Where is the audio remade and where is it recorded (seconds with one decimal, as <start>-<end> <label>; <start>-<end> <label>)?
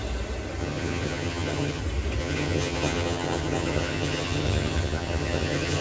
0.0-0.6 recorded; 0.6-1.8 remade; 1.8-2.2 recorded; 2.2-5.8 remade